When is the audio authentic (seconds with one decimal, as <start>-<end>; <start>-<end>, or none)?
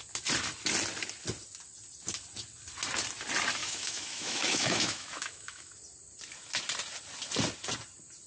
0.0-3.6; 5.7-8.3